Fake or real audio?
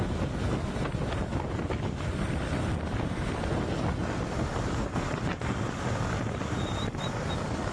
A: real